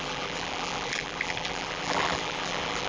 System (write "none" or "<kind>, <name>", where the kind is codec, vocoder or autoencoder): vocoder, BigVGAN v2